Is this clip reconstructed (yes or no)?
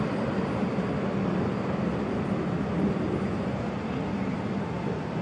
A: no